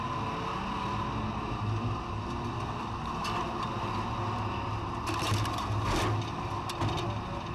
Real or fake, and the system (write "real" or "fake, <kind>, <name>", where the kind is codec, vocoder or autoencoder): real